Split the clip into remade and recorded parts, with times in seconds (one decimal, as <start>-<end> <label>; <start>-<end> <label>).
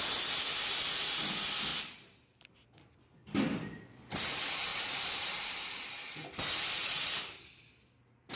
0.0-1.7 recorded; 1.7-2.5 remade; 2.5-4.7 recorded; 4.7-7.5 remade; 7.5-8.4 recorded